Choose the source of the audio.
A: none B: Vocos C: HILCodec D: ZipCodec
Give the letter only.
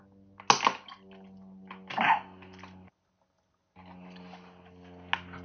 A